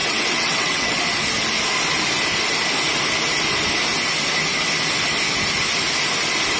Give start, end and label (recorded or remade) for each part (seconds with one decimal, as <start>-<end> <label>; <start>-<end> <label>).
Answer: 0.0-1.0 remade; 1.0-6.6 recorded